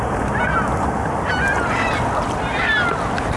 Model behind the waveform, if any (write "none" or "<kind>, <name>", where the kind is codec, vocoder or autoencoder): none